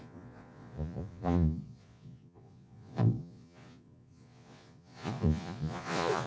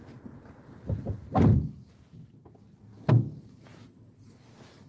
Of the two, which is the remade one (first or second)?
first